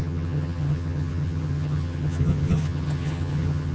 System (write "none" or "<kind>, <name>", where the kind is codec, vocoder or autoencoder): vocoder, HiFi-GAN